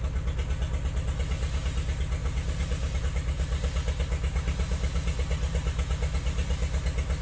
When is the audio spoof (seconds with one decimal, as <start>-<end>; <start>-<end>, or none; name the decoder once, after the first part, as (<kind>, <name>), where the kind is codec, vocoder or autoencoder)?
none